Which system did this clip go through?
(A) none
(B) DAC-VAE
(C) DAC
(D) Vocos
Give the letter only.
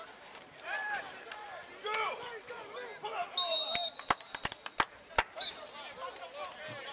A